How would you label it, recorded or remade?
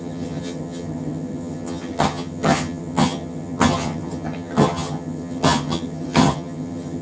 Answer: remade